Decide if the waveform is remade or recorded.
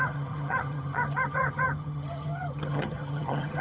remade